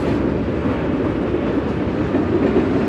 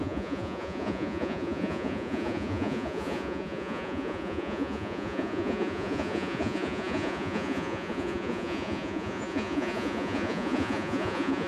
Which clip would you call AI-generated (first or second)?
second